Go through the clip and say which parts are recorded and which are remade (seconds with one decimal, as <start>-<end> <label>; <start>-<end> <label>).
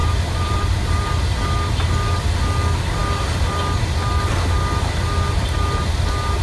0.0-1.1 remade; 1.1-6.4 recorded